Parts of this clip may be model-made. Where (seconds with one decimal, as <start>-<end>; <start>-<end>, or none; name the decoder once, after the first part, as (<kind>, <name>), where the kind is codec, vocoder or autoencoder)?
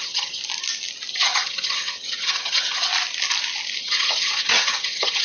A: 0.0-0.4 (vocoder, HiFi-GAN); 1.1-2.9; 3.8-5.2